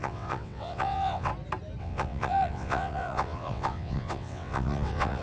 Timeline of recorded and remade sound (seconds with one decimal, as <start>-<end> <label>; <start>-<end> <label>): 0.0-1.3 remade; 1.3-1.8 recorded; 1.8-5.2 remade